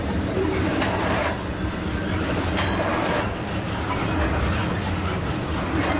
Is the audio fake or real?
real